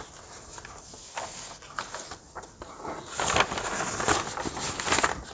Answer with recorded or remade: recorded